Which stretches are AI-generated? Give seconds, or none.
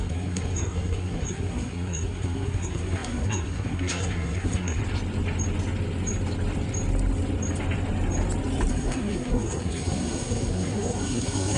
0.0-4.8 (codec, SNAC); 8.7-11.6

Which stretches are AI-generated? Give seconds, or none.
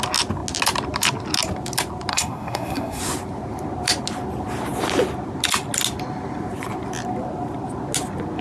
2.1-3.0 (codec, SNAC)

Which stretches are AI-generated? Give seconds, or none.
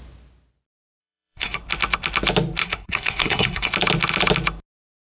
1.0-1.6 (codec, SNAC); 2.6-3.7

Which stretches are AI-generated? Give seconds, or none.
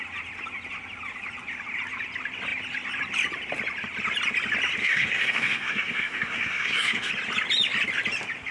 4.8-7.1 (codec, SNAC)